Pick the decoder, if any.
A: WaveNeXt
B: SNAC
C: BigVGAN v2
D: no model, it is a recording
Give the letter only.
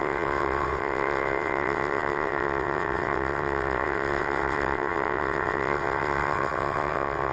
A